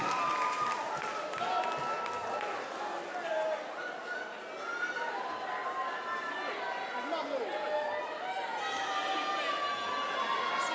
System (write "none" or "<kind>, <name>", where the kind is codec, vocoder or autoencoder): none